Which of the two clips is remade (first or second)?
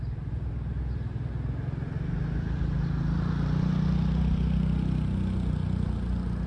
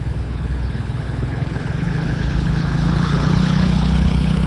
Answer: second